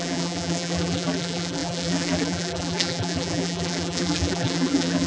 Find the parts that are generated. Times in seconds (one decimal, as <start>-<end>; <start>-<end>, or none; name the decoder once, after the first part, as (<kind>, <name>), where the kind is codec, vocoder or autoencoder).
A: 0.0-5.1 (vocoder, BigVGAN v2)